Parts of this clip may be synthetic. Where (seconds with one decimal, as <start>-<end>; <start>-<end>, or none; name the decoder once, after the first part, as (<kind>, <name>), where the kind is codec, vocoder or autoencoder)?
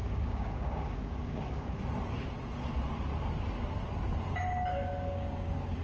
0.0-1.7 (codec, DAC); 4.7-5.8